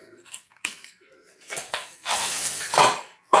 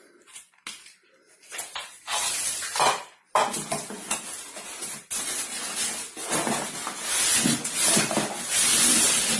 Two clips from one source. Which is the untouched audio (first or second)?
second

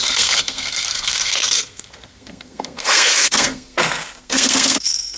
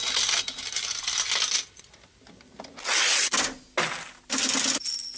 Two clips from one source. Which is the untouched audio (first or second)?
second